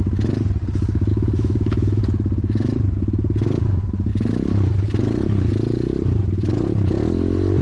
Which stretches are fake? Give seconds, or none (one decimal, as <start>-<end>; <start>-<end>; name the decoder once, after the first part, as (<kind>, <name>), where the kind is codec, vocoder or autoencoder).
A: 1.1-2.0 (autoencoder, DAC-VAE)